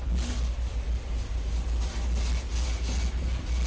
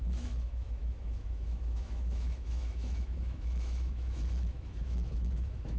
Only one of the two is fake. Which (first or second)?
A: second